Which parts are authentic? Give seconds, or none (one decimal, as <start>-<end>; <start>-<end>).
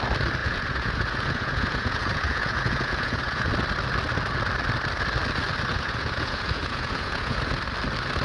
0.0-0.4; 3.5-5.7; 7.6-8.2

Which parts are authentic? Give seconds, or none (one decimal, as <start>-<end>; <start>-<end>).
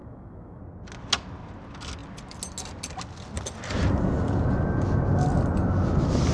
0.6-6.3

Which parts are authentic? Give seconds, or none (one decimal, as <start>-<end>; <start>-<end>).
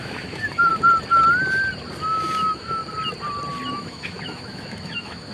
0.7-2.0; 2.8-3.7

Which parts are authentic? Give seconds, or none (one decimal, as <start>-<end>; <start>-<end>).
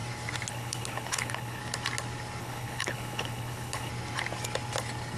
0.0-0.5; 1.6-2.4; 3.9-5.2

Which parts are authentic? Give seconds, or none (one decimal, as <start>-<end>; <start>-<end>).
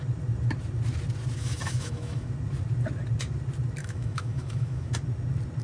0.0-1.4; 2.3-3.8; 4.9-5.6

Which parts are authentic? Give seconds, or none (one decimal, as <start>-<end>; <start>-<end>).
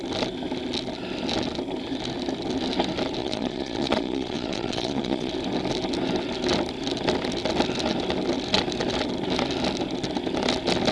0.0-3.2; 5.3-10.9